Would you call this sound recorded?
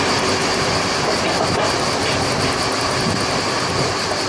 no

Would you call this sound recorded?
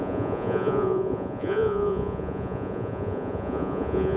no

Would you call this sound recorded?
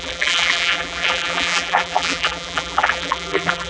no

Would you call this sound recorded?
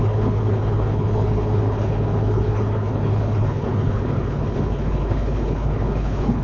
no